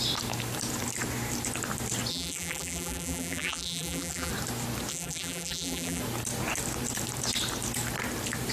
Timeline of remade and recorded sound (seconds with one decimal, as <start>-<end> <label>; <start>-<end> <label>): 0.0-2.1 recorded; 2.1-4.3 remade; 4.3-4.9 recorded; 4.9-6.0 remade; 6.0-8.5 recorded